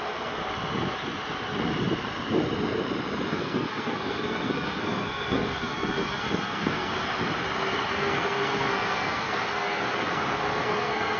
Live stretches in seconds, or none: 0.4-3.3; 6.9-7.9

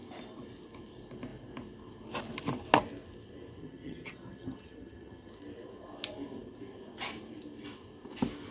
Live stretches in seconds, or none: 0.0-3.6; 5.3-8.5

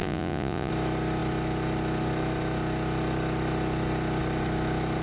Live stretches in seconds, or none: 0.7-5.0

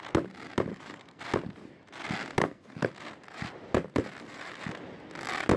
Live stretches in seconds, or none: 0.0-0.7; 1.2-2.4; 2.9-5.6

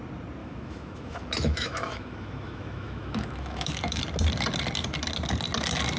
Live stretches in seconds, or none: 0.0-0.4; 4.0-6.0

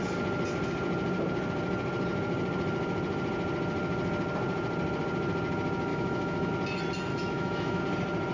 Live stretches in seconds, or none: 0.0-5.9; 6.5-7.1; 7.8-8.3

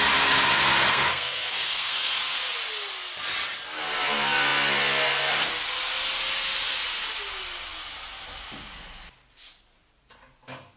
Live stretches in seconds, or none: 0.0-0.9; 2.2-10.8